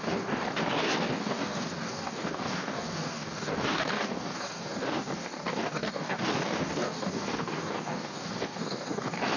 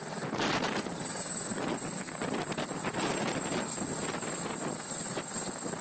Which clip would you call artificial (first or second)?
first